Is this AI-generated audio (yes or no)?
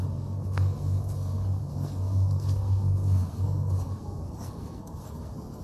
yes